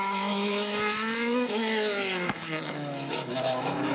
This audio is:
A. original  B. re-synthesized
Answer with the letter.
B